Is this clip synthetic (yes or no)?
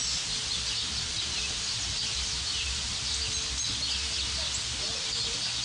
no